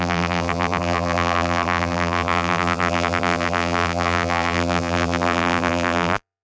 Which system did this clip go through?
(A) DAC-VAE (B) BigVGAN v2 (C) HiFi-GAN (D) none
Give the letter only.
B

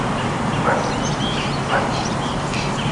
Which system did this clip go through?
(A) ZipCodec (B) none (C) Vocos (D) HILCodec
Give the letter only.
B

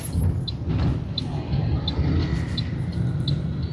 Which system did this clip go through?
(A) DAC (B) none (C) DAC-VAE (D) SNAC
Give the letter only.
B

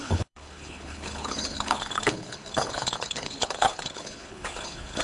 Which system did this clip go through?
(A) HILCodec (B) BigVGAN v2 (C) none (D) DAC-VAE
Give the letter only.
A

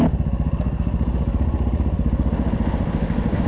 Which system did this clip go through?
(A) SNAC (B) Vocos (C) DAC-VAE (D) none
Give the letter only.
D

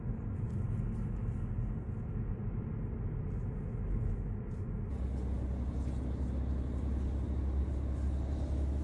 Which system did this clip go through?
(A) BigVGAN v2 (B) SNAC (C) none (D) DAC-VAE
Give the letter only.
C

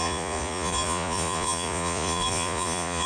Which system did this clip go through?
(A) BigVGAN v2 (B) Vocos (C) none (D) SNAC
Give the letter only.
B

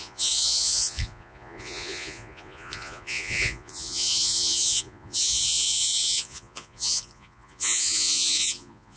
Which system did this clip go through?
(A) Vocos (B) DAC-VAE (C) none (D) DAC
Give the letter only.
A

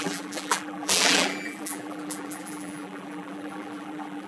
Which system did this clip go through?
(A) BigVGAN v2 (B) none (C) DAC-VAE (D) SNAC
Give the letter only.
A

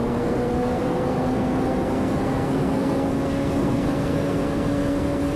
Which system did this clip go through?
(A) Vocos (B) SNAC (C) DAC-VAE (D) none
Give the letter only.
B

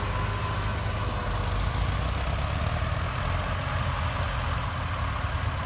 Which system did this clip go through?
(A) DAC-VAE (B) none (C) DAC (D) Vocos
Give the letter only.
B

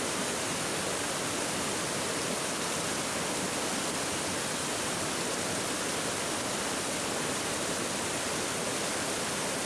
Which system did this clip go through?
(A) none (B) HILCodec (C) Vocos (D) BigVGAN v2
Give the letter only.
A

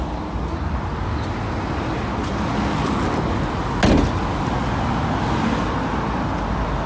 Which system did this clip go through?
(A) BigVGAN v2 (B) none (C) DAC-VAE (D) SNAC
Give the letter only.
B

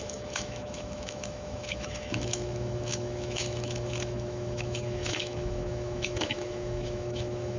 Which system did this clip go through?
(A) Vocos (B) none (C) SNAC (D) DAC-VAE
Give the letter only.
D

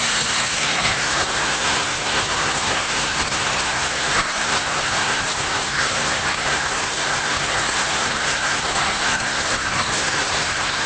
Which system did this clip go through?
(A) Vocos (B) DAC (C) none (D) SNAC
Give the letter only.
D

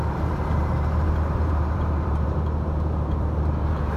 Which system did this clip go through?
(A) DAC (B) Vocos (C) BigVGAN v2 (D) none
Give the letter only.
C